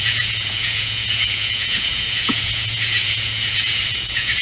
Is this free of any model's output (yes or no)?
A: no